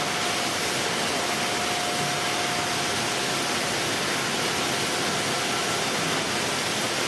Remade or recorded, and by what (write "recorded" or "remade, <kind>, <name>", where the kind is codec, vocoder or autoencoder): recorded